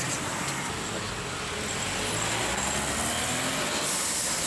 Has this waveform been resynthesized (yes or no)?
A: no